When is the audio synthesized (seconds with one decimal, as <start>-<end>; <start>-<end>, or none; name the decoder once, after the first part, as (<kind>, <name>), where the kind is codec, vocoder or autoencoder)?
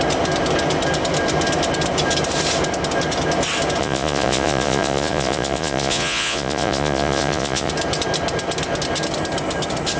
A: 3.8-7.7 (vocoder, Vocos)